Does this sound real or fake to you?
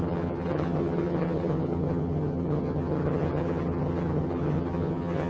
fake